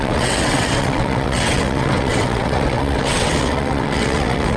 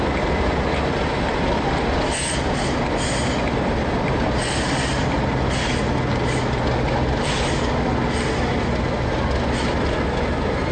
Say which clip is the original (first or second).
second